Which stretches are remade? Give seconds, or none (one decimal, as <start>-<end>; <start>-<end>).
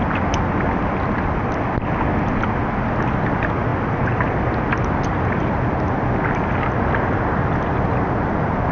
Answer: none